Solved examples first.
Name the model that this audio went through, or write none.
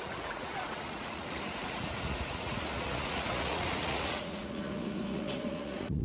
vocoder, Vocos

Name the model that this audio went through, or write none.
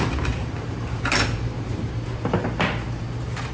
vocoder, BigVGAN v2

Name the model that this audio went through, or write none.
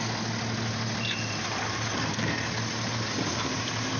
none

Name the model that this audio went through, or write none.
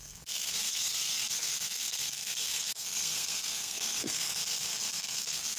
codec, SNAC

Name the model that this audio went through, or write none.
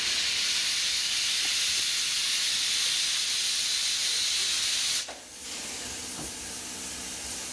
none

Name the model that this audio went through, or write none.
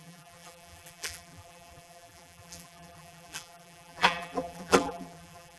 vocoder, BigVGAN v2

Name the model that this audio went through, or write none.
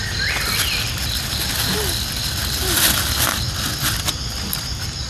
none